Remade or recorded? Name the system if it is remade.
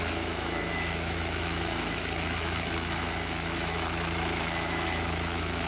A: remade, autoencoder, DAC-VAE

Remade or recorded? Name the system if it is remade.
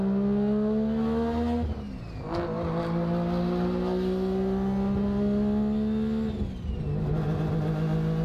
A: recorded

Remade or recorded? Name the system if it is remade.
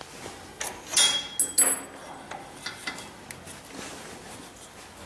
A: recorded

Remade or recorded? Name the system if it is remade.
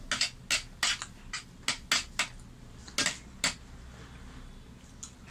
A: recorded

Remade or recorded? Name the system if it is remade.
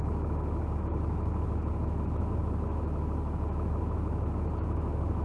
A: remade, autoencoder, DAC-VAE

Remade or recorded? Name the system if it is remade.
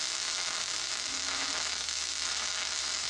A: remade, autoencoder, DAC-VAE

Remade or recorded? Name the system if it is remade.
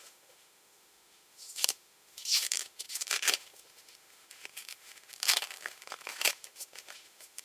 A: remade, autoencoder, DAC-VAE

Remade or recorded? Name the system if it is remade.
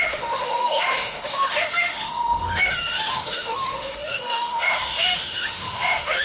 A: remade, autoencoder, DAC-VAE